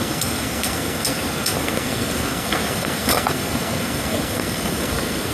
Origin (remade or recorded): remade